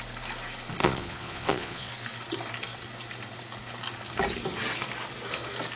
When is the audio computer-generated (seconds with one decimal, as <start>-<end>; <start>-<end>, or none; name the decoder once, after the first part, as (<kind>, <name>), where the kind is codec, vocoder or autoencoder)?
0.8-1.9 (vocoder, Vocos)